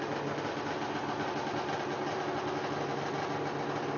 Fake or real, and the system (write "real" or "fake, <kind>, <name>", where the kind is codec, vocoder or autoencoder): real